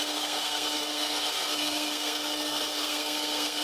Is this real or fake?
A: fake